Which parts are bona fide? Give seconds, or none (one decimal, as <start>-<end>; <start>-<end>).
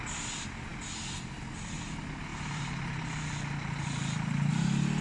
0.0-5.0